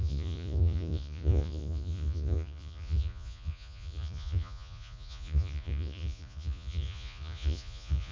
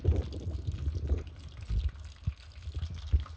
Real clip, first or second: second